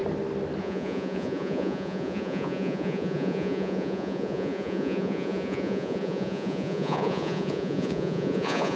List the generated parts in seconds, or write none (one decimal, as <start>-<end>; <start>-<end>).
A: 0.6-8.8